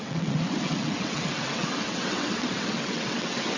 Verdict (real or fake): fake